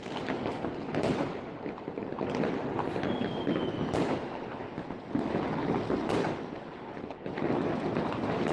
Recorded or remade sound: recorded